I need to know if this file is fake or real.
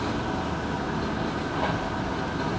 real